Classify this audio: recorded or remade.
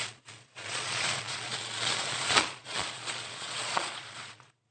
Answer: remade